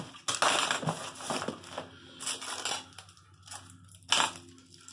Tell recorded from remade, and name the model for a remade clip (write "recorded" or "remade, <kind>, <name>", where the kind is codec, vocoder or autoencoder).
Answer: recorded